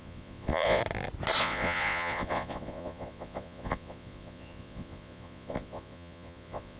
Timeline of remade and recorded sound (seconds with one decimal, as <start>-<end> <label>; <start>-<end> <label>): 0.0-0.8 remade; 0.8-1.4 recorded; 1.4-6.8 remade

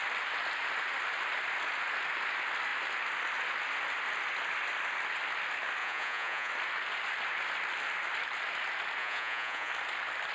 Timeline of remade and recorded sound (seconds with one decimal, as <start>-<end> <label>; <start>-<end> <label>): 0.0-5.8 recorded; 5.8-6.5 remade; 6.5-9.0 recorded; 9.0-9.7 remade; 9.7-10.3 recorded

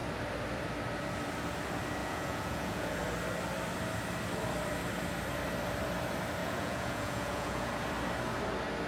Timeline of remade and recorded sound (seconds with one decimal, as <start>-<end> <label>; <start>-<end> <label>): 0.0-2.0 recorded; 2.0-3.0 remade; 3.0-6.4 recorded; 6.4-7.7 remade; 7.7-8.9 recorded

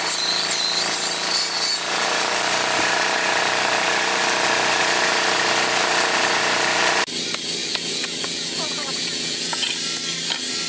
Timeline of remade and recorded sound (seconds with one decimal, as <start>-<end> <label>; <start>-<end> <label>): 0.0-7.6 recorded; 7.6-9.7 remade; 9.7-10.7 recorded

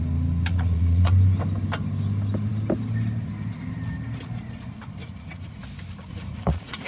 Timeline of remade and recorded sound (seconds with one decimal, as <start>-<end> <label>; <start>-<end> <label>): 0.0-0.5 recorded; 0.5-1.1 remade; 1.1-5.0 recorded; 5.0-5.6 remade; 5.6-6.1 recorded; 6.1-6.9 remade

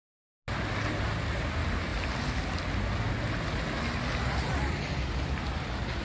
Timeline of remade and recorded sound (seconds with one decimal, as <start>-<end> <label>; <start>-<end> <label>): 0.0-6.0 recorded

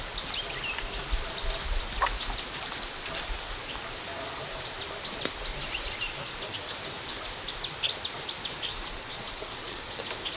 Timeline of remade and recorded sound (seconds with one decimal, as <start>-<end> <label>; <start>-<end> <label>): 0.0-8.7 recorded; 8.7-10.0 remade; 10.0-10.4 recorded